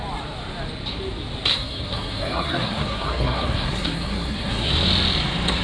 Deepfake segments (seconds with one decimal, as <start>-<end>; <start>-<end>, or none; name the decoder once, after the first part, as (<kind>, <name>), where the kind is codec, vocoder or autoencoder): 1.5-4.7 (codec, SNAC)